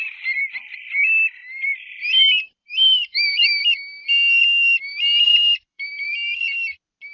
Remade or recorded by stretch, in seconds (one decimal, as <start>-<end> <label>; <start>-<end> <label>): 0.0-1.0 recorded; 1.0-4.1 remade; 4.1-4.9 recorded; 4.9-6.4 remade; 6.4-7.1 recorded